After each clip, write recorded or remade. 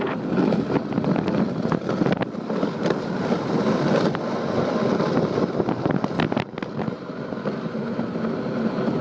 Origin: recorded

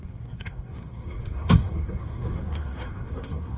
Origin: remade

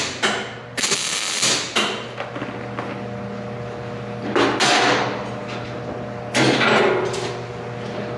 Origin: recorded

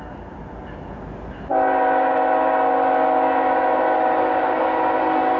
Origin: recorded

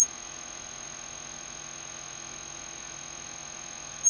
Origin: recorded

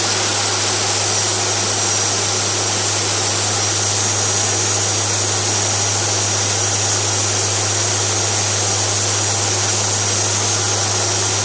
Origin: recorded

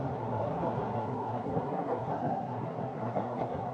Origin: remade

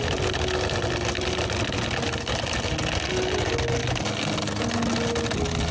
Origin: recorded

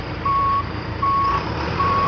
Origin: remade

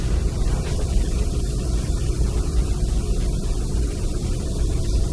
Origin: remade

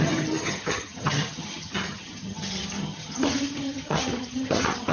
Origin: remade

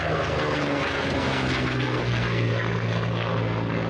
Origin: remade